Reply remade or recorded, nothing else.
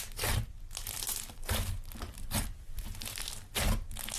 recorded